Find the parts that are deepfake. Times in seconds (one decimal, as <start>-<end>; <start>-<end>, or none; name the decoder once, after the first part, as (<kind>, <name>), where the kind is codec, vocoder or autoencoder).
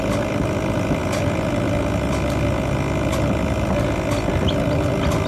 none